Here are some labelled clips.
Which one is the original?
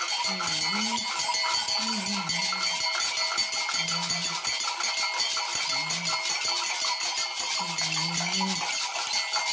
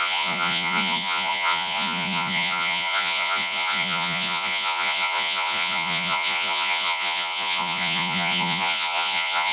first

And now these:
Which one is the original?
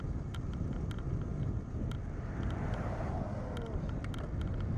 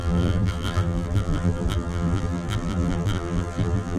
first